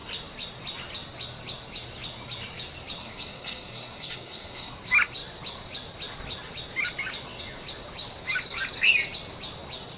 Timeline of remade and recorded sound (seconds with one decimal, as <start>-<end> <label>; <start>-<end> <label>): 0.0-3.0 recorded; 3.0-4.7 remade; 4.7-10.0 recorded